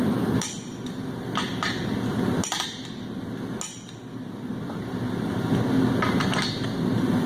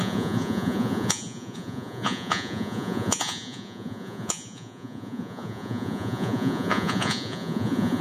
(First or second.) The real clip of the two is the first